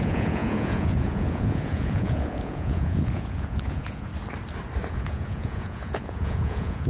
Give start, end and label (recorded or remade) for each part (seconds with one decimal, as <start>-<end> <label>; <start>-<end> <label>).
0.0-4.1 remade; 4.1-4.9 recorded; 4.9-6.9 remade